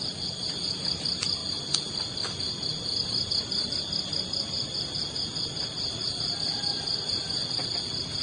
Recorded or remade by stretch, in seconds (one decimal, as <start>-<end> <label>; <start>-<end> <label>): 0.0-8.2 recorded